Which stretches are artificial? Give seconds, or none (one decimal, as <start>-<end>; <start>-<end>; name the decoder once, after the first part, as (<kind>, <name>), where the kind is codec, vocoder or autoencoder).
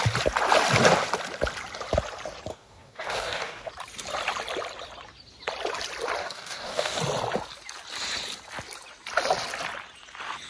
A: 2.5-3.7 (codec, DAC); 6.2-7.0